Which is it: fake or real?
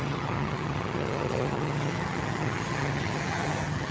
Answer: fake